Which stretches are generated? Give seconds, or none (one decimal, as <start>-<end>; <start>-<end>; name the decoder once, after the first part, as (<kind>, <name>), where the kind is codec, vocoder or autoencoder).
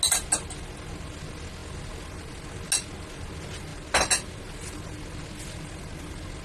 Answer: none